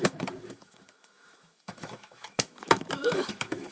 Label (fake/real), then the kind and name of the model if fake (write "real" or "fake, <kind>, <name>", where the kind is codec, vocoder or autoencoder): fake, autoencoder, DAC-VAE